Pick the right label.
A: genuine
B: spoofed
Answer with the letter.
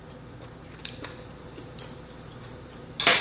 A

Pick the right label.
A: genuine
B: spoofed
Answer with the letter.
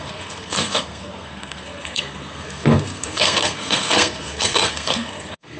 B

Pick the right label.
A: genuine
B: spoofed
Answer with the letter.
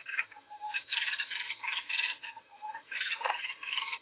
B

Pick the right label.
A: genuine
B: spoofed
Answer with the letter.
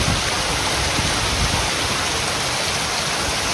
A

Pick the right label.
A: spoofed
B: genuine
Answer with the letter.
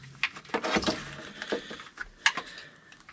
B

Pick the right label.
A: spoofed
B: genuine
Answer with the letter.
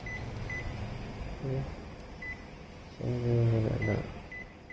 B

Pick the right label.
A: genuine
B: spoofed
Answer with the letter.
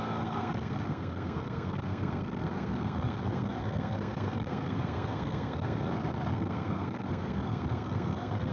B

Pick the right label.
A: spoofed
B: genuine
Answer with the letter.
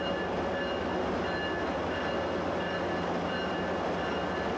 B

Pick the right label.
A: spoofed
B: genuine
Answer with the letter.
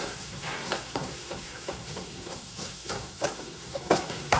A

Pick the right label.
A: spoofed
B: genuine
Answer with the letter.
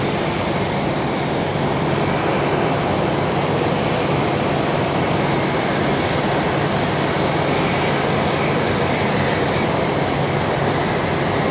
B